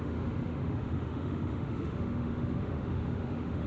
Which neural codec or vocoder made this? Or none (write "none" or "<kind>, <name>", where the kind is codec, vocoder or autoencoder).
autoencoder, DAC-VAE